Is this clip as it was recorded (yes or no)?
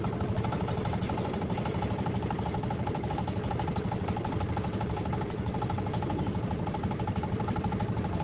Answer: no